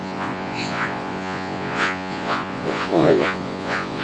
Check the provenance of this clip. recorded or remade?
remade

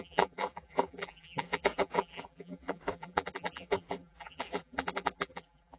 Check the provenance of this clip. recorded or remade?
remade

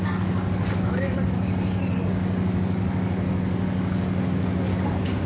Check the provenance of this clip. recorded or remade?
remade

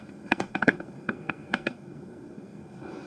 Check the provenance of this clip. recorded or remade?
remade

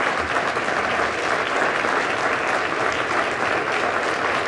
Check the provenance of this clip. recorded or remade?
recorded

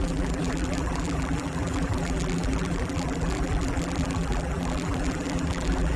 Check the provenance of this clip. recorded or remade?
remade